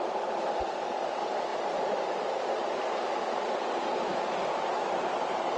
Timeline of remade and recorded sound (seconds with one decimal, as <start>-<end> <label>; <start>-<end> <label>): 0.0-5.6 recorded